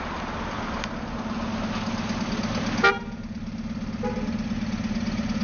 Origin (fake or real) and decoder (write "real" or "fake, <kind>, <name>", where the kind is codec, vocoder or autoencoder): real